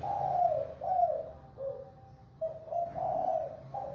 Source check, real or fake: real